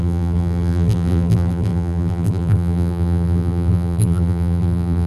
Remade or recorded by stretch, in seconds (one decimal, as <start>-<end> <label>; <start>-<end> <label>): 0.0-5.1 remade